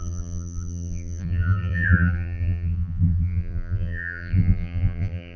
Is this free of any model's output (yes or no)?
no